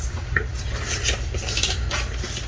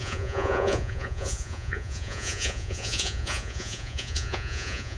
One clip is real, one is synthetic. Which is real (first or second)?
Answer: first